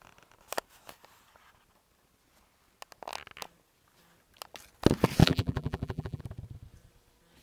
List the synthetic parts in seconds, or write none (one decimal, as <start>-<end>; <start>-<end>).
5.2-6.2